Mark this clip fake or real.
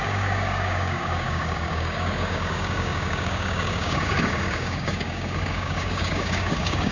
fake